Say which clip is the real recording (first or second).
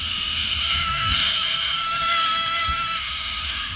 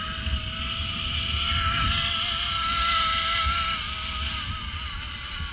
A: second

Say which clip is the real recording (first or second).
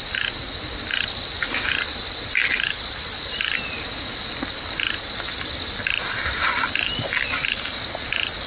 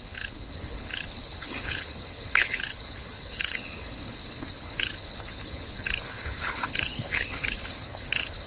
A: first